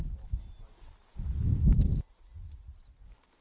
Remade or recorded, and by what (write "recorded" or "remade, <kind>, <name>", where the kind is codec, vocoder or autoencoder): recorded